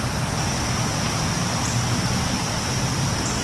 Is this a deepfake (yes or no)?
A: no